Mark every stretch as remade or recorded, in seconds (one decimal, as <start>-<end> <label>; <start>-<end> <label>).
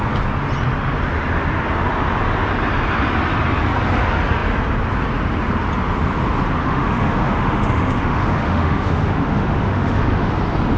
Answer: 0.0-6.6 recorded; 6.6-10.3 remade; 10.3-10.8 recorded